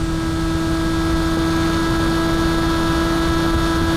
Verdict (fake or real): real